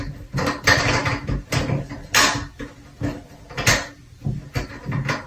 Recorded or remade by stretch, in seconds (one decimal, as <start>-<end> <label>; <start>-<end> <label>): 0.0-5.3 recorded